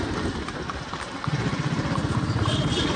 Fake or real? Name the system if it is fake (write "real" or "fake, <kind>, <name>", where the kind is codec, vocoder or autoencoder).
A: real